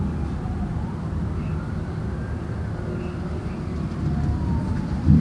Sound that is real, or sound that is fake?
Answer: real